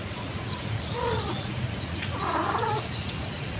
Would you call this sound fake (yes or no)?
yes